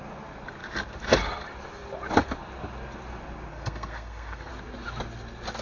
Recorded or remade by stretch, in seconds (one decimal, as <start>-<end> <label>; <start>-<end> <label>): 0.0-3.5 recorded; 3.5-4.5 remade; 4.5-5.6 recorded